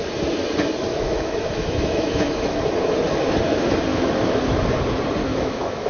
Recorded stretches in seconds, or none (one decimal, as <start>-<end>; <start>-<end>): 0.0-0.9; 2.6-3.9; 4.4-5.2